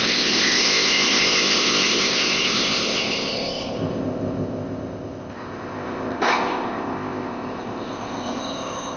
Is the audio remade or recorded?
remade